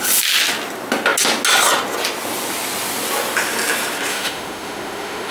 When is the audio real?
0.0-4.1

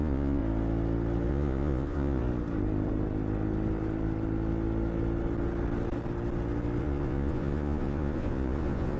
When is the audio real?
0.4-1.3; 2.2-6.8

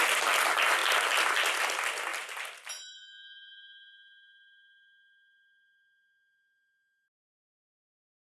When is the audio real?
0.0-8.2

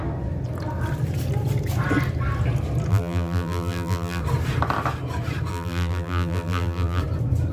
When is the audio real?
0.0-2.9; 4.2-5.5; 7.0-7.5

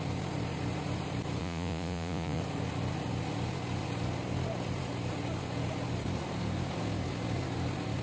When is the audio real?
0.0-1.4; 2.4-8.0

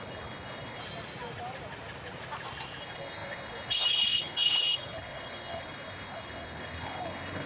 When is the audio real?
0.8-2.8

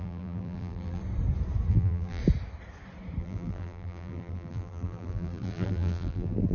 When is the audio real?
1.0-1.7; 2.2-3.2

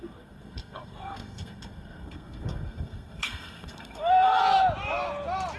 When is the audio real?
4.4-5.6